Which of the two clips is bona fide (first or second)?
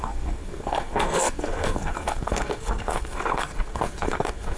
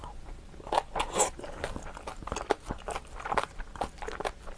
second